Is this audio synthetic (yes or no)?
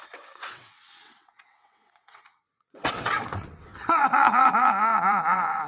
yes